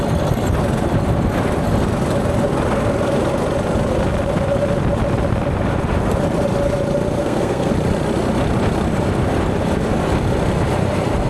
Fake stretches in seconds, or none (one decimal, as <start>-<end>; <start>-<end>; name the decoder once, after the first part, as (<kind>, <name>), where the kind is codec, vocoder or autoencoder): 7.2-7.7 (codec, SNAC)